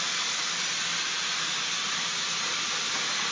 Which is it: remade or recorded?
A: recorded